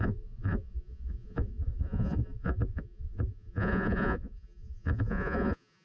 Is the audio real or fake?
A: fake